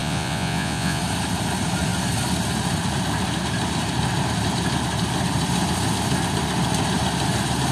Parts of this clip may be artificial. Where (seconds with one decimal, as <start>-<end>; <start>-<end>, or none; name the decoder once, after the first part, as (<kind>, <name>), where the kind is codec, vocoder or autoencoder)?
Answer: 0.0-1.0 (vocoder, Vocos)